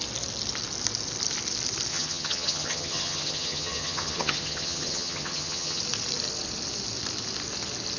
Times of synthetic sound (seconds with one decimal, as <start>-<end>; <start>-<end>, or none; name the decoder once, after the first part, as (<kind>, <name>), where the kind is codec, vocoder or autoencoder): 1.9-5.8 (vocoder, HiFi-GAN)